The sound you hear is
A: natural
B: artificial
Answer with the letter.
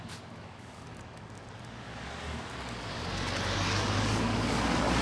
B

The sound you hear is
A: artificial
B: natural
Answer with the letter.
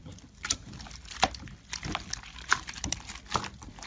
B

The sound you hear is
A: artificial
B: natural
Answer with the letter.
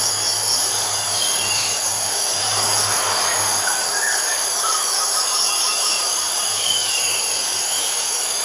A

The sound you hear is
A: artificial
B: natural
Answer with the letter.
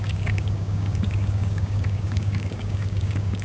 A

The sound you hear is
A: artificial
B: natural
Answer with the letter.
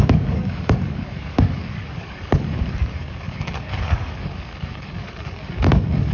A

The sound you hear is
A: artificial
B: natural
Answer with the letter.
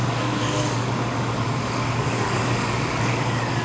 A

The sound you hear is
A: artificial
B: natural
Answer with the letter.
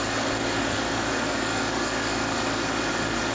A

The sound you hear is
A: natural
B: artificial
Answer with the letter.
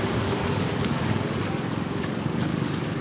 B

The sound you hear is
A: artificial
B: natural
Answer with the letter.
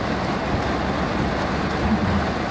B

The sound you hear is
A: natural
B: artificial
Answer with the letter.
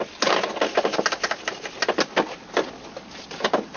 A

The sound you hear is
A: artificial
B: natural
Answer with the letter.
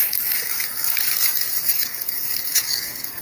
A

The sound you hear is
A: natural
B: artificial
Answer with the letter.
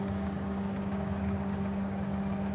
B